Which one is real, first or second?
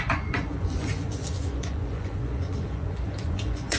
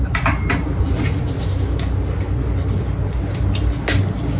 second